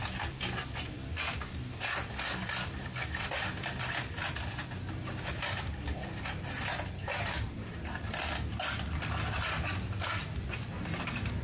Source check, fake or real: real